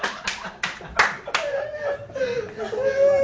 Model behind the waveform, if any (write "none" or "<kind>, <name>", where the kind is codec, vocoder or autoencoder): none